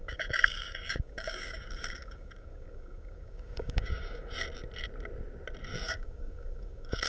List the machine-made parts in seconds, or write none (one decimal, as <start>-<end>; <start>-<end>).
0.0-4.3; 5.7-7.1